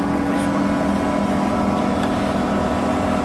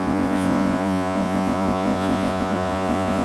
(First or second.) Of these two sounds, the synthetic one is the second